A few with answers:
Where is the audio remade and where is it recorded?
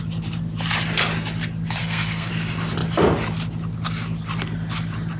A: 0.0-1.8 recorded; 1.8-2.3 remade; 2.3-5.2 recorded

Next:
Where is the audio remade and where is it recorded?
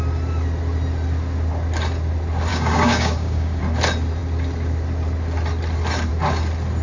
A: 0.0-2.5 recorded; 2.5-3.6 remade; 3.6-6.8 recorded